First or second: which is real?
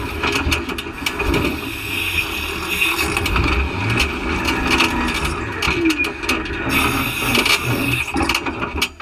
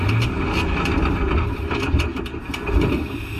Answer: first